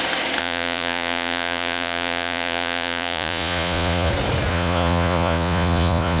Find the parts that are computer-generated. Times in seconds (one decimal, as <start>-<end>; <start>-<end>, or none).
0.4-4.1; 4.5-6.2